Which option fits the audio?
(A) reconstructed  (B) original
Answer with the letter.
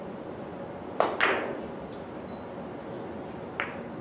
B